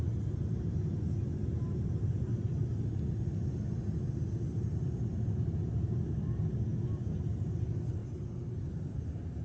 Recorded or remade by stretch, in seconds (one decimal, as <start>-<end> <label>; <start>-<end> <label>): 0.0-9.4 recorded